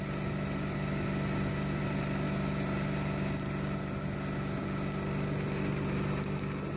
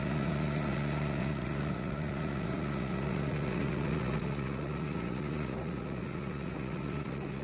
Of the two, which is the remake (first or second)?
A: second